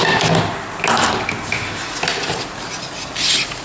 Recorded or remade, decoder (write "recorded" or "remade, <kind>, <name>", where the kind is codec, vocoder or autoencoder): recorded